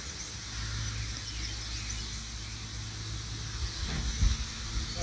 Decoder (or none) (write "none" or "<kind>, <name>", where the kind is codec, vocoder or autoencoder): none